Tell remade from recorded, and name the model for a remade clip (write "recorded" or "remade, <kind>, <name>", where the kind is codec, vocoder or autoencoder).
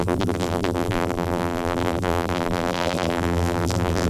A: remade, vocoder, BigVGAN v2